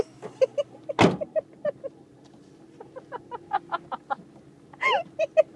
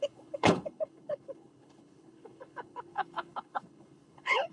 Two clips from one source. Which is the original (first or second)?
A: first